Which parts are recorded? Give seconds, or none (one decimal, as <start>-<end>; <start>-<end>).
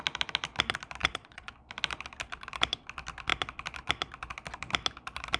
0.0-1.0; 1.5-5.4